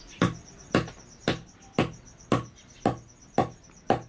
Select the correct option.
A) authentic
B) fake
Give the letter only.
A